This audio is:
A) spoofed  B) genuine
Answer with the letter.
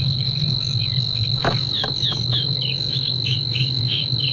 A